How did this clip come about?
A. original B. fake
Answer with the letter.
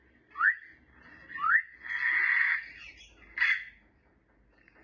A